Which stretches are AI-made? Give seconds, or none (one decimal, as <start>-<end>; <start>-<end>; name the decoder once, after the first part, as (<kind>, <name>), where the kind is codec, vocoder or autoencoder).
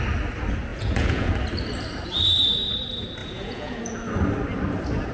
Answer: 0.7-1.3 (vocoder, Vocos); 3.2-3.8